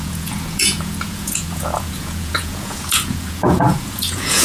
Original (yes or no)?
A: no